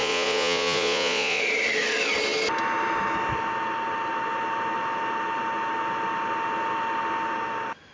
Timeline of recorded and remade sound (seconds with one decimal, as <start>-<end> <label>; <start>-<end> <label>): 0.0-1.4 remade; 1.4-7.9 recorded